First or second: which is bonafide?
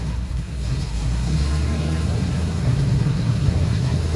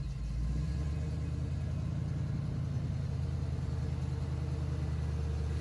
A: second